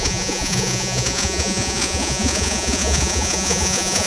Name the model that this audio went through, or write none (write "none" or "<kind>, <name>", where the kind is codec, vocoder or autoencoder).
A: vocoder, Vocos